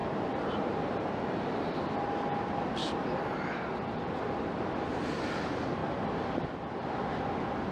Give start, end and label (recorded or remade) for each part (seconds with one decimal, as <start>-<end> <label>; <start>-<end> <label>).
0.0-1.5 remade; 1.5-7.7 recorded